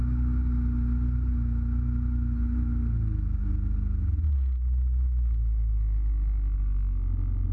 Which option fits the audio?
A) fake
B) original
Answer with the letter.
B